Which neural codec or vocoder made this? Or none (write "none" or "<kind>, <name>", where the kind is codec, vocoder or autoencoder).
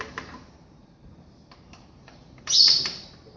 vocoder, BigVGAN v2